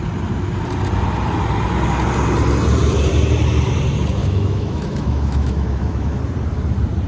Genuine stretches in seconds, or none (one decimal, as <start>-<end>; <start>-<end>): 0.0-4.2; 6.2-7.1